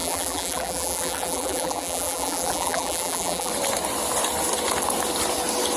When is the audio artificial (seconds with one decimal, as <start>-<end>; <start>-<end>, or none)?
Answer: 0.0-3.5